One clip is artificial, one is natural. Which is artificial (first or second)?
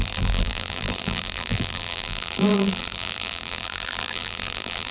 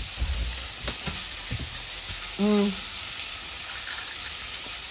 first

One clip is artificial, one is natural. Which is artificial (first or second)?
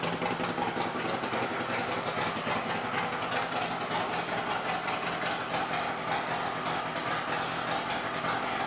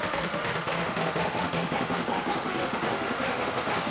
second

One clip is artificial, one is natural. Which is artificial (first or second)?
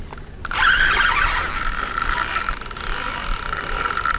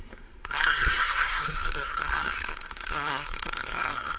second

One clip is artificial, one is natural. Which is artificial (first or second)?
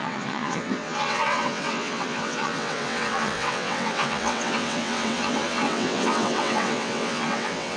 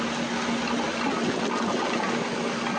first